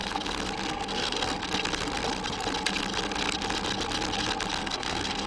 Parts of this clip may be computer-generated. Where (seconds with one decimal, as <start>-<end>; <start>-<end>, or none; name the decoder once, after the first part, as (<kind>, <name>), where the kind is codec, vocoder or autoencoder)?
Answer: 0.7-1.4 (codec, SNAC); 4.6-5.3